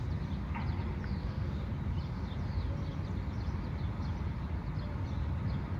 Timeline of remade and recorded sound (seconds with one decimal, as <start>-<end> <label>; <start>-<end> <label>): 0.0-1.2 recorded; 1.2-1.7 remade; 1.7-5.8 recorded